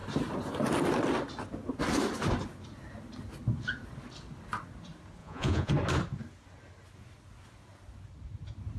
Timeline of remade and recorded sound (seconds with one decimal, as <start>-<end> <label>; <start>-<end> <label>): 0.0-5.2 recorded; 5.2-5.7 remade; 5.7-8.8 recorded